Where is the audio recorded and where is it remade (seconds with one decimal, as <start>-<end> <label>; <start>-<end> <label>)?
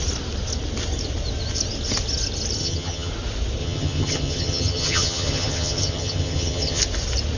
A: 0.0-2.6 recorded; 2.6-3.1 remade; 3.1-3.6 recorded; 3.6-6.8 remade; 6.8-7.4 recorded